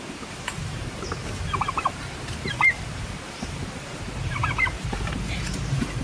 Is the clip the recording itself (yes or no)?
no